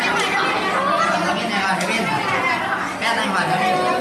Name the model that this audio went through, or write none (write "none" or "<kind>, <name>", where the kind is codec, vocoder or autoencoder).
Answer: none